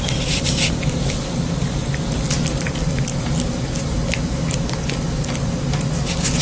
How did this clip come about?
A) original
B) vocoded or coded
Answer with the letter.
A